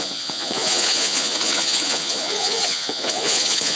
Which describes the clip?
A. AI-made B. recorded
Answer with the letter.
A